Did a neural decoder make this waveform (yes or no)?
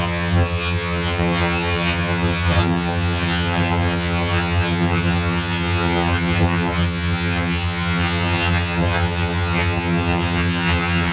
yes